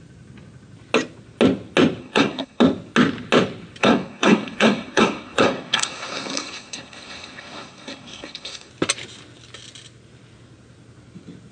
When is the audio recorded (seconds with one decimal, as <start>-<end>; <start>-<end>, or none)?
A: 0.0-2.0; 2.6-3.8; 8.7-11.5